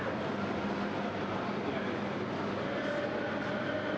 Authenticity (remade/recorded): recorded